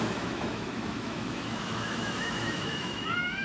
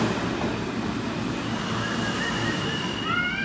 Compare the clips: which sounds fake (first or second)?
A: first